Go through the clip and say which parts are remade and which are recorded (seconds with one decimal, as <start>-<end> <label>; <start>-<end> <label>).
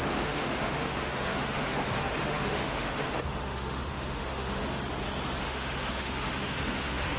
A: 0.0-4.8 remade; 4.8-5.4 recorded; 5.4-7.2 remade